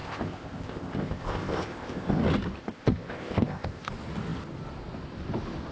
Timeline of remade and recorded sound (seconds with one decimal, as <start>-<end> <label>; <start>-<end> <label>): 0.0-2.2 remade; 2.2-2.6 recorded; 2.6-3.9 remade; 3.9-5.7 recorded